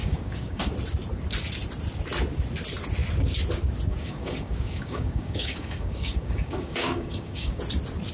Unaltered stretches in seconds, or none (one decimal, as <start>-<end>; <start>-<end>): 0.7-3.9; 7.6-8.1

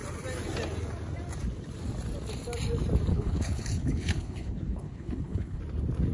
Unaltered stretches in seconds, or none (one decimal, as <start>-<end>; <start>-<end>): 0.0-3.1; 5.6-6.1

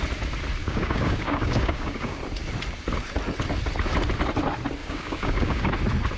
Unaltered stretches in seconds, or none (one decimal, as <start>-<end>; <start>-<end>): 0.0-0.6; 2.2-4.8; 5.7-6.2